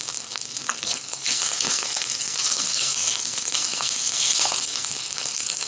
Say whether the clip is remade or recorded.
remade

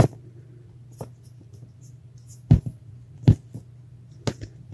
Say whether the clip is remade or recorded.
recorded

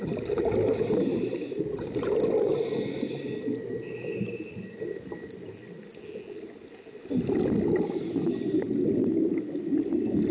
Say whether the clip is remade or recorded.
recorded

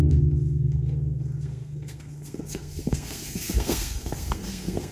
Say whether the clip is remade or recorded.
remade